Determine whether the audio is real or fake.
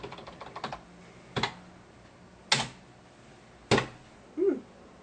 real